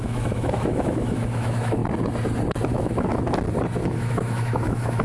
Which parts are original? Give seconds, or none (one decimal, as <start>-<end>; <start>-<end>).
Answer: 1.8-2.7; 3.1-3.8